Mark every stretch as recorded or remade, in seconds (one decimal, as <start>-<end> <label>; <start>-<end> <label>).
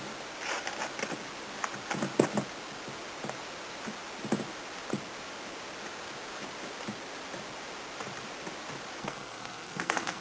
0.0-9.0 recorded; 9.0-10.2 remade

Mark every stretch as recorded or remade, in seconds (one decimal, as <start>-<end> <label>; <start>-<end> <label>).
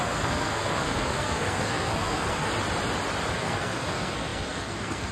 0.0-2.5 remade; 2.5-3.3 recorded; 3.3-5.1 remade